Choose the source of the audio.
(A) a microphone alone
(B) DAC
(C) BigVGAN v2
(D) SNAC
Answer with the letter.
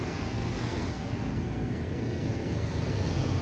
D